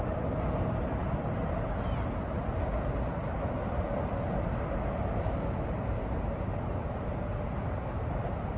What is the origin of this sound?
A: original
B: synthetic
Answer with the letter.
A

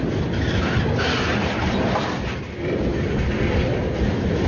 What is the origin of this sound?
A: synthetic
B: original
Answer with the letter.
B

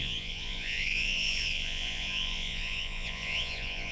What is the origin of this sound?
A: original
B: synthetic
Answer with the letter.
B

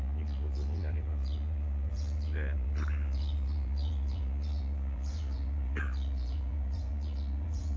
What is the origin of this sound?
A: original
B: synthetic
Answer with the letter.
B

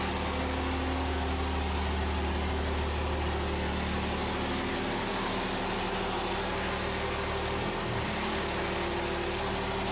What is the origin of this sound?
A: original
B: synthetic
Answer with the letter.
A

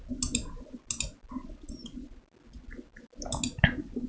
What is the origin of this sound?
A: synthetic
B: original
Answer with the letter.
B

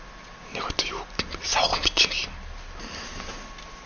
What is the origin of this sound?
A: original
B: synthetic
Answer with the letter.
A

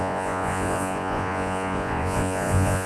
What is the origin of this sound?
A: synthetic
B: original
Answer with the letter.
A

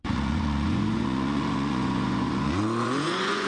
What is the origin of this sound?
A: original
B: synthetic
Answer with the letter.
B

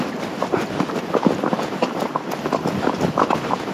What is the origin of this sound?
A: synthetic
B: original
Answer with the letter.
B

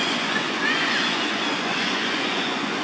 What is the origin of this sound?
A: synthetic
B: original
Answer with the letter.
A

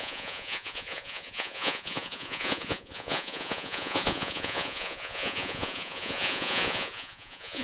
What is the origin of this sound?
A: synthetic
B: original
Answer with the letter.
A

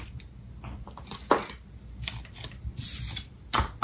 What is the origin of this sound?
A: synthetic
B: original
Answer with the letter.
B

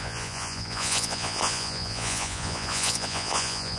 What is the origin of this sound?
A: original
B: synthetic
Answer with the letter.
B